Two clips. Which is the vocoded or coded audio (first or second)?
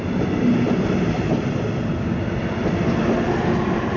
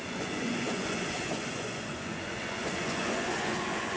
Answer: second